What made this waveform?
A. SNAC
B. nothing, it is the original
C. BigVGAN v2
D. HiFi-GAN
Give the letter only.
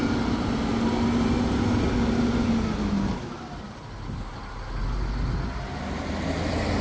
B